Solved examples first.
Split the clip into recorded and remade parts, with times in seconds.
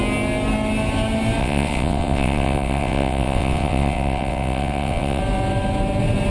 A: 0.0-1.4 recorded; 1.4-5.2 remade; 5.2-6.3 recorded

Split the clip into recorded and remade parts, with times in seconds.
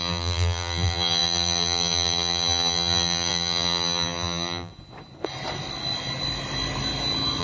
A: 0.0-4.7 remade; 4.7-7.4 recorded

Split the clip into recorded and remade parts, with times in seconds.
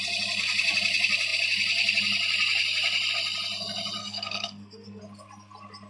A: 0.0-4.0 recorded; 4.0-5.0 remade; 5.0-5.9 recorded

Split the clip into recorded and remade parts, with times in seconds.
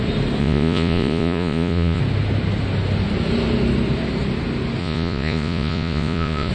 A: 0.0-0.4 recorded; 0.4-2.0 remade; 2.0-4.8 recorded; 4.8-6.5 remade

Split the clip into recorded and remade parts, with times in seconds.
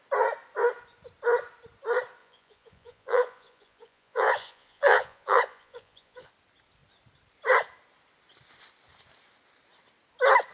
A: 0.0-2.2 recorded; 2.2-6.3 remade; 6.3-10.5 recorded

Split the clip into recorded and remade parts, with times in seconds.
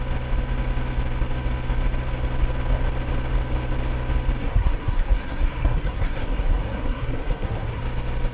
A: 0.0-4.4 recorded; 4.4-7.8 remade; 7.8-8.3 recorded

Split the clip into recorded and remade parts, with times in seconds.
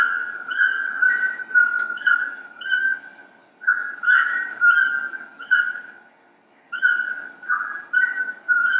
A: 0.0-0.9 remade; 0.9-1.6 recorded; 1.6-8.8 remade